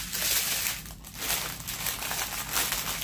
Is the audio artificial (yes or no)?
no